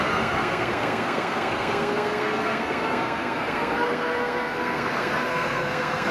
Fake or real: fake